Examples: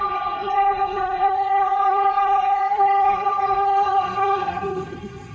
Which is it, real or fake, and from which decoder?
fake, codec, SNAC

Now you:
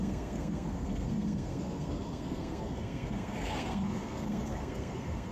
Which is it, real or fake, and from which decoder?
fake, codec, SNAC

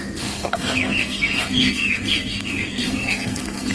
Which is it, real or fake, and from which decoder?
fake, codec, SNAC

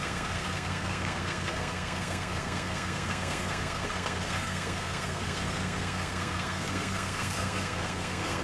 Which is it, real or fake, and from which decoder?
fake, codec, SNAC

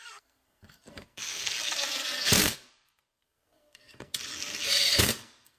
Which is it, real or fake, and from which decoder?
fake, codec, SNAC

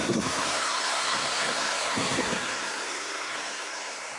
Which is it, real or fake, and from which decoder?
fake, codec, SNAC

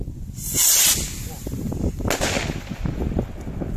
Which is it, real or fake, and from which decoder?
real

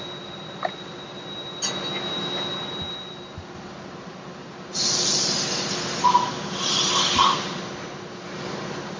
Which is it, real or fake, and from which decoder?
real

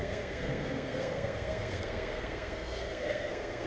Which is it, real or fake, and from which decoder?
fake, codec, SNAC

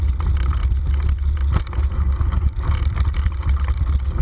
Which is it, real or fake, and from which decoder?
real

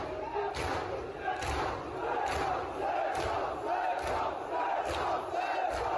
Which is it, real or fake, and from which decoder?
real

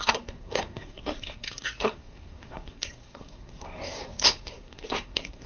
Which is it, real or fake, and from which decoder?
fake, codec, SNAC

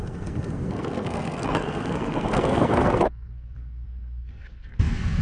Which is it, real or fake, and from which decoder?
fake, codec, SNAC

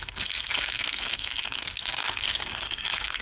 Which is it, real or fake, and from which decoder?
fake, codec, SNAC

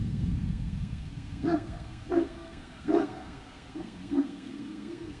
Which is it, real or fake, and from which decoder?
fake, codec, SNAC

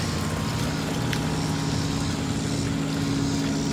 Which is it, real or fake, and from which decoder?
real